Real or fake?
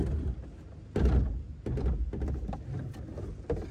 real